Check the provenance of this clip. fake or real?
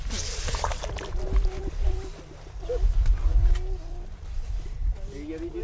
real